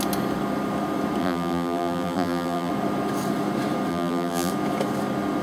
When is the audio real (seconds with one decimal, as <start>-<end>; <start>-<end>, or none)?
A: 0.0-1.2; 2.7-3.9; 4.5-5.4